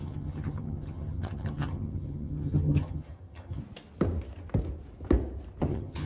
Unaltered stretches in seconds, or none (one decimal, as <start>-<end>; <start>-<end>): 3.6-5.6